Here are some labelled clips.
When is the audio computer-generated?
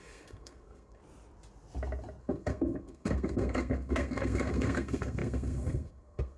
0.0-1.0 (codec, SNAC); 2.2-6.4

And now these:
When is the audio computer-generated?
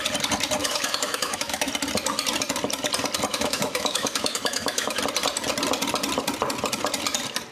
0.6-1.7 (autoencoder, DAC-VAE); 3.3-5.0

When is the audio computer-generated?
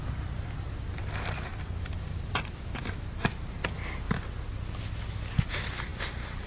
1.5-2.8 (vocoder, BigVGAN v2); 3.6-4.1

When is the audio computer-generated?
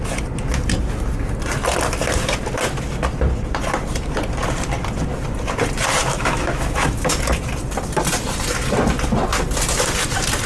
6.0-7.1 (autoencoder, DAC-VAE)